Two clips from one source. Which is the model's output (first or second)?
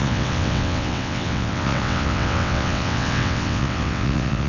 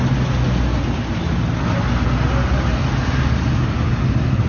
first